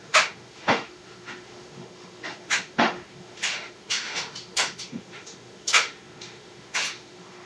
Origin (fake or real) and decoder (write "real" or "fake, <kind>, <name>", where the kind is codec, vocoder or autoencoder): fake, autoencoder, DAC-VAE